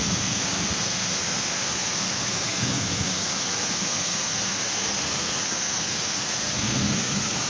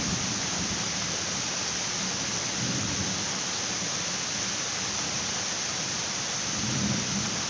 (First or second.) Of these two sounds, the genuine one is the second